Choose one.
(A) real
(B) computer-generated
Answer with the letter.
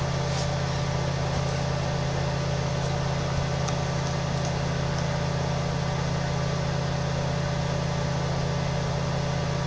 A